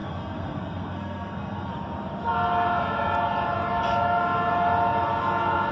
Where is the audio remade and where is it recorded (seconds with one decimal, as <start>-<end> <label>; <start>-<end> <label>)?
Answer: 0.0-1.7 remade; 1.7-5.7 recorded